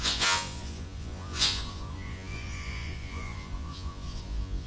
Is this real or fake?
fake